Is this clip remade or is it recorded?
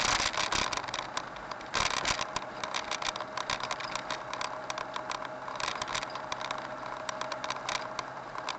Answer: recorded